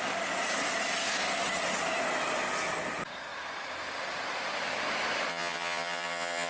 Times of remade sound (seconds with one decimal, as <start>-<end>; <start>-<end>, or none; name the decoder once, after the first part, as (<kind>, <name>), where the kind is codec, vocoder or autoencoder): 5.3-6.5 (vocoder, HiFi-GAN)

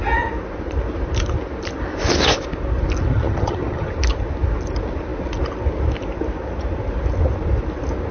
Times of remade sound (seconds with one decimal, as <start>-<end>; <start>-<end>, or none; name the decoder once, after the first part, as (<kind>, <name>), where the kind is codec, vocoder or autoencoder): 3.1-3.9 (vocoder, HiFi-GAN)

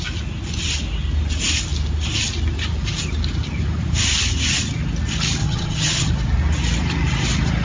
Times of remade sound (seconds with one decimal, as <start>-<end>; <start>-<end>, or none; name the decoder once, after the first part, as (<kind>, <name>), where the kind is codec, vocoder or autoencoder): 5.4-6.1 (vocoder, HiFi-GAN)

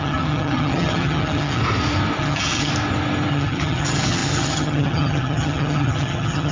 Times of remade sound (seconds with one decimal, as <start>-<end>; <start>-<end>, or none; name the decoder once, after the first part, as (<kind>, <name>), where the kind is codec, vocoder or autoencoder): 0.0-1.6 (vocoder, HiFi-GAN); 2.2-2.7; 3.3-6.5

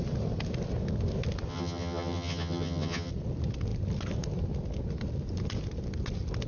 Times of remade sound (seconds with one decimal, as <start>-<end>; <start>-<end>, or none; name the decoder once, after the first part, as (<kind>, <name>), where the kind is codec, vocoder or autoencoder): 1.5-3.1 (vocoder, HiFi-GAN)